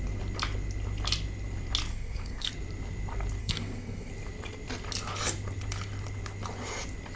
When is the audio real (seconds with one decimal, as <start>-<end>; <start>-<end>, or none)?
0.0-1.9; 2.5-3.4; 4.1-7.2